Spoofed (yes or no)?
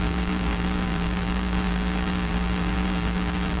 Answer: yes